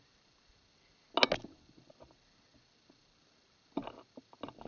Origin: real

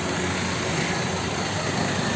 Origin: real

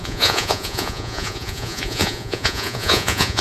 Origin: fake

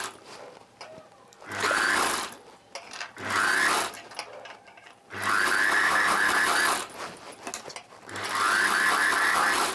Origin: real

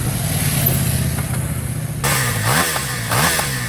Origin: real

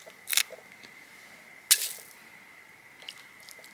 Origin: real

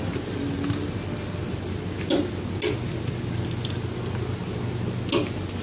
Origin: real